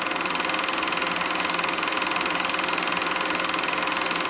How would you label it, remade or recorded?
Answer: recorded